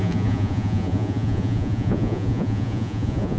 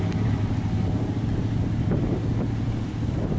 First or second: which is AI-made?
first